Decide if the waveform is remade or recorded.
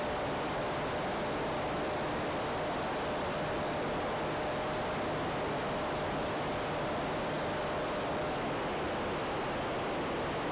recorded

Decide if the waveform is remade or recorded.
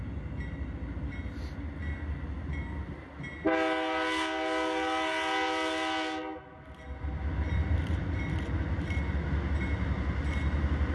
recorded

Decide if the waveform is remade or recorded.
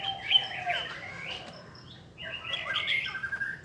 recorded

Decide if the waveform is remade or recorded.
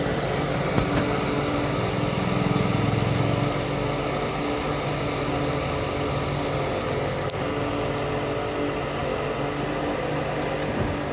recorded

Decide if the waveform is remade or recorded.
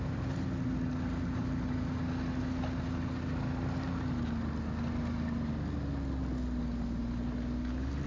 recorded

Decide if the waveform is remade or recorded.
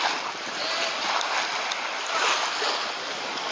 recorded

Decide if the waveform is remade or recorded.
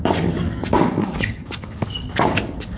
remade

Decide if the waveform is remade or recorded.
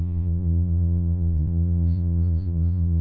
remade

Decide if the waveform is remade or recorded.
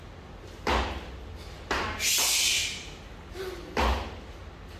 recorded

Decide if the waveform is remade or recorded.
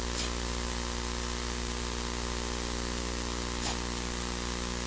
recorded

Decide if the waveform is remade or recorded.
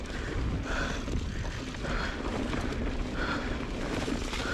recorded